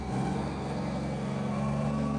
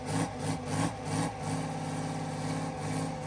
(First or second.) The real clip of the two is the second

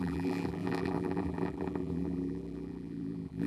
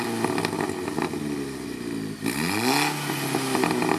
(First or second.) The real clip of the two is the second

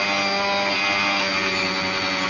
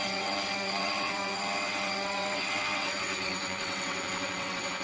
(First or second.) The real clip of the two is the first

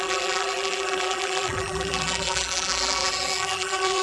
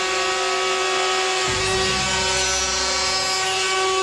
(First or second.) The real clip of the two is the second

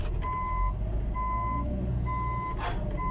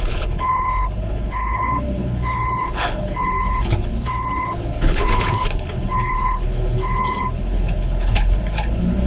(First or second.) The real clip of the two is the first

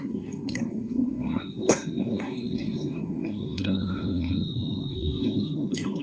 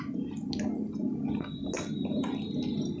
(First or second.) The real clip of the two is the second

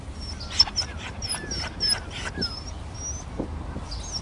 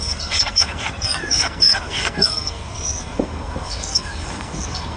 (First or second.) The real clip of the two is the first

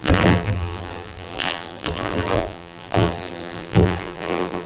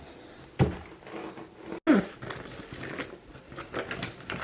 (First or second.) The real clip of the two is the second